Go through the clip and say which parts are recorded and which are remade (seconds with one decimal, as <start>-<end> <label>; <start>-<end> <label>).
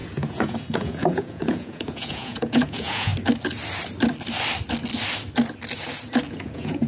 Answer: 0.0-3.1 remade; 3.1-6.3 recorded; 6.3-6.9 remade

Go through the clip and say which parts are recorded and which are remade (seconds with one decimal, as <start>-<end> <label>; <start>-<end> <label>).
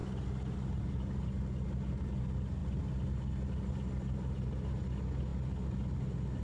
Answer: 0.0-6.4 recorded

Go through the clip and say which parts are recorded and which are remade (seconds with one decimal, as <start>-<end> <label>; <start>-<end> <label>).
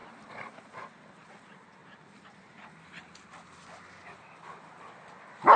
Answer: 0.0-5.6 recorded